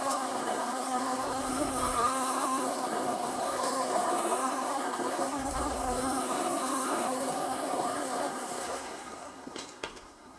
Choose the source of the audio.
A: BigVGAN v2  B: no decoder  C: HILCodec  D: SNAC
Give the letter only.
D